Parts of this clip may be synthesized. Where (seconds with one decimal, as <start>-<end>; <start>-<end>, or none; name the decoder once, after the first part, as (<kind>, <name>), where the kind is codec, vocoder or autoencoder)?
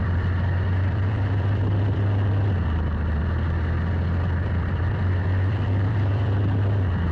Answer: 0.0-2.9 (vocoder, BigVGAN v2); 4.4-7.1